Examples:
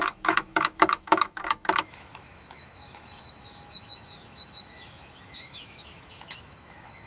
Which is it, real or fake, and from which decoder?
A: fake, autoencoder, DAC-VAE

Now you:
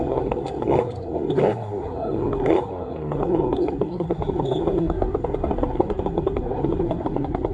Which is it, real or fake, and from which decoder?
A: fake, codec, SNAC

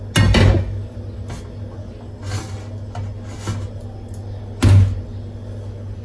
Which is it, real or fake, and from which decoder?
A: real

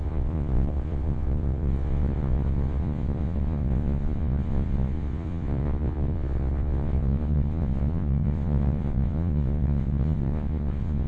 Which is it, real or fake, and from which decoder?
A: fake, vocoder, Vocos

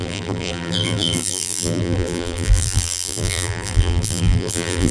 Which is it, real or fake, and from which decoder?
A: fake, vocoder, BigVGAN v2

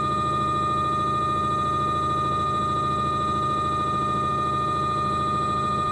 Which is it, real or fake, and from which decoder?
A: real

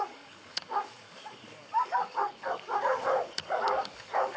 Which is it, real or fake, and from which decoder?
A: fake, codec, DAC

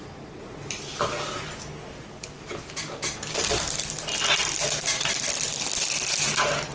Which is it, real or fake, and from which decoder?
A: real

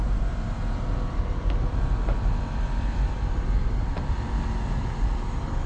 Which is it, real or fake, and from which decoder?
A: real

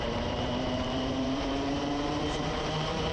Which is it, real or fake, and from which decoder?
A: fake, vocoder, BigVGAN v2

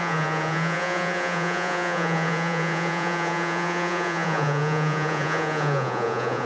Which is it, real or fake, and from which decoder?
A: fake, vocoder, Vocos